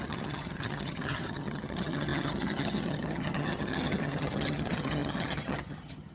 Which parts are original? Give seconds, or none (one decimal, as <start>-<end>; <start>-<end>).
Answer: none